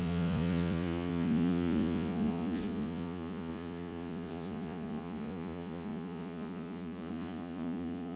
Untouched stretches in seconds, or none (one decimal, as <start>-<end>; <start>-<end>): none